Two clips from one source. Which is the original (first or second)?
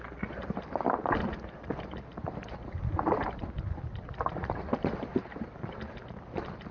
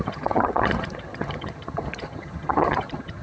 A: first